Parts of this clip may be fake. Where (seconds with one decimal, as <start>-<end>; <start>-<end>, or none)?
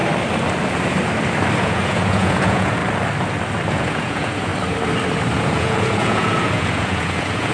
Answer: 1.6-2.8; 3.7-4.5; 5.3-7.5